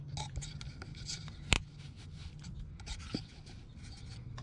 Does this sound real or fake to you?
real